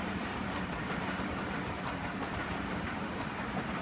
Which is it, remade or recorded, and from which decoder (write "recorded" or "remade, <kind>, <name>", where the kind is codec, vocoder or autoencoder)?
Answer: remade, vocoder, BigVGAN v2